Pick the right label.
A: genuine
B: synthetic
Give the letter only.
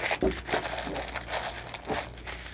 A